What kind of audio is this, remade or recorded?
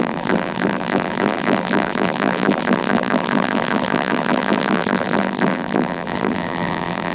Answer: remade